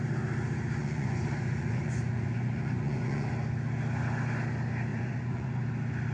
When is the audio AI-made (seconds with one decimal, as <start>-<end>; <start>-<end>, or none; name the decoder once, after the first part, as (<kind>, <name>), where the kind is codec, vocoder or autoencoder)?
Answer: 0.8-3.3 (vocoder, Vocos); 4.9-5.6